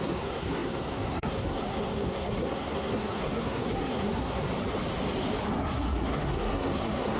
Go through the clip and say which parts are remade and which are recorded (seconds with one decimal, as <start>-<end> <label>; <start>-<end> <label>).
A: 0.0-4.5 remade; 4.5-5.6 recorded; 5.6-7.2 remade